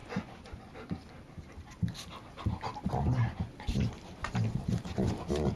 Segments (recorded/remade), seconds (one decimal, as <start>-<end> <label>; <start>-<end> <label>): 0.0-0.7 remade; 0.7-5.6 recorded